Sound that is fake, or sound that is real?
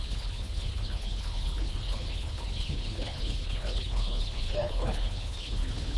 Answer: fake